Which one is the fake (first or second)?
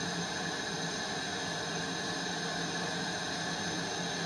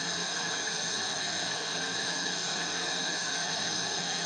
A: second